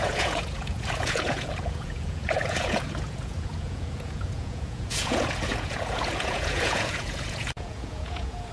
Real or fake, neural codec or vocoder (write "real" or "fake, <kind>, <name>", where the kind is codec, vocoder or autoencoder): fake, vocoder, Vocos